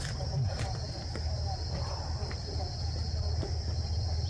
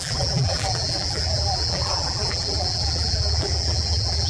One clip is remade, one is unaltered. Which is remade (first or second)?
second